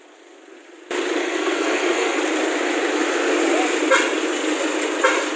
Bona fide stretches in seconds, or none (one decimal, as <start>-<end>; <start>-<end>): 0.0-1.2; 2.2-5.4